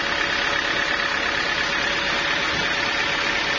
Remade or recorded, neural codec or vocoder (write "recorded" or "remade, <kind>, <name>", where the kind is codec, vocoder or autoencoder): recorded